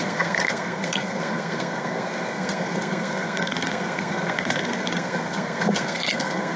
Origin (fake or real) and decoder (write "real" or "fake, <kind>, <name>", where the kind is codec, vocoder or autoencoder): fake, codec, SNAC